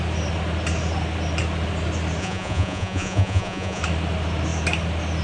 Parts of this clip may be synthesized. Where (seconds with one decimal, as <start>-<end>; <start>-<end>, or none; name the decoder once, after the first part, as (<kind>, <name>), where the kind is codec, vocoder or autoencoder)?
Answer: 2.2-3.8 (vocoder, Vocos)